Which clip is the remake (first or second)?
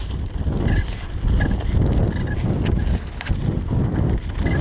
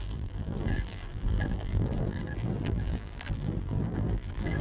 second